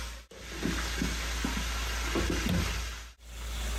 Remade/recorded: recorded